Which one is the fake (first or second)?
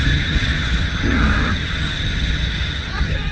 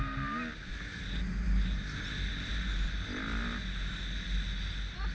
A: first